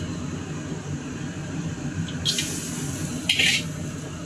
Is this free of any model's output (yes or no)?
yes